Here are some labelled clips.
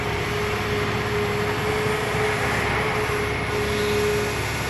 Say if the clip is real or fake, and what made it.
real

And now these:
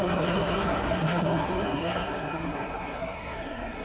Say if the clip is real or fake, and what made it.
fake, codec, SNAC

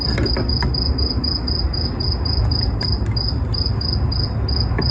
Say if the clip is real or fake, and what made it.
real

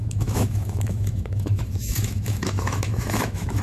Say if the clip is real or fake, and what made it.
fake, autoencoder, DAC-VAE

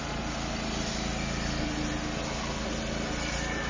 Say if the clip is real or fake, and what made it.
real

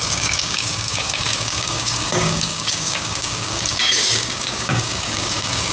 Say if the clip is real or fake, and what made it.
fake, codec, DAC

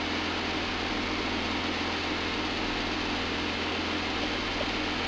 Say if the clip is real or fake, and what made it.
real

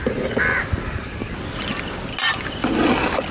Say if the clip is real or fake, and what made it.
real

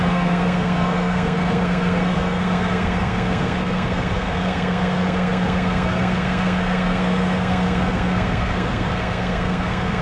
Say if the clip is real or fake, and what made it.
fake, codec, SNAC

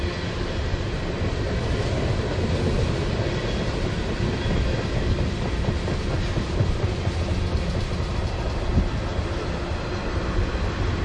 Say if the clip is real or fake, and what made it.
real